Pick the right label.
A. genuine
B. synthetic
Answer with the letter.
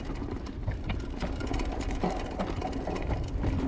A